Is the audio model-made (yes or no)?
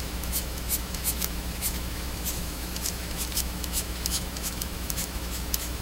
yes